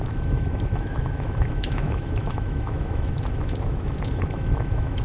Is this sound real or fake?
fake